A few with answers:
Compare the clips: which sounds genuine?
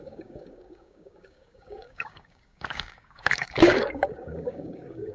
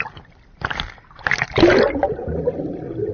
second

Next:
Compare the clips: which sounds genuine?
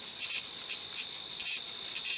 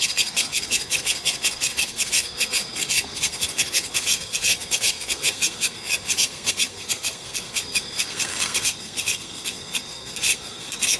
first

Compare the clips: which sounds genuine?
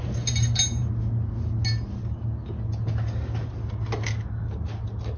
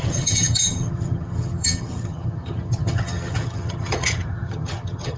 first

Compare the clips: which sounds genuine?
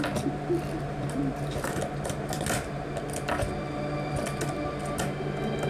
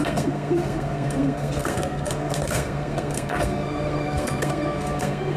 first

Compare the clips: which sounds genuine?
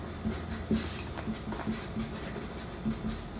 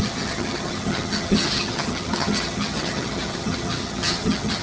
first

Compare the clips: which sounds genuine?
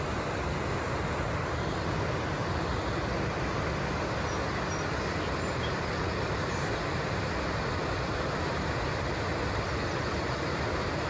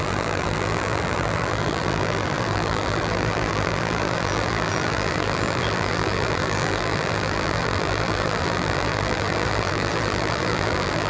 first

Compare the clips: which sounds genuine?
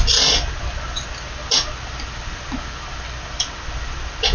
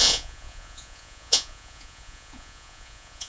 first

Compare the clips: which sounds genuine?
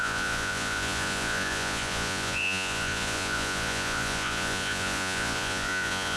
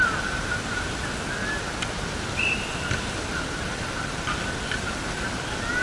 second